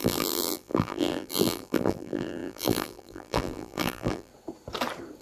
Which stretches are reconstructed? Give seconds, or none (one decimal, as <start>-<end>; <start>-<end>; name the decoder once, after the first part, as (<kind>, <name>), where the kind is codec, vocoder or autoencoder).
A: 0.0-4.3 (vocoder, BigVGAN v2)